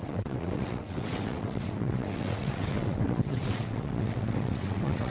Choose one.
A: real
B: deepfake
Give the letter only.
B